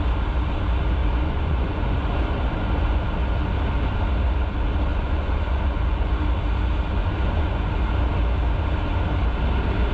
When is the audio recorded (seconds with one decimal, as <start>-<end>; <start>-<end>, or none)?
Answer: 0.0-1.0; 3.0-4.9; 6.3-7.0; 7.7-9.9